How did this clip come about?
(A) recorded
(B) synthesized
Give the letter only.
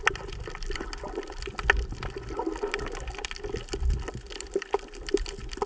A